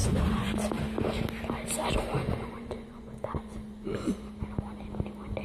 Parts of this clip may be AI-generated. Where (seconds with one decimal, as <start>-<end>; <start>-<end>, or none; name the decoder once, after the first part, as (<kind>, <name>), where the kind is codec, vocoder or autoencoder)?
0.0-0.6 (vocoder, Vocos); 2.2-4.1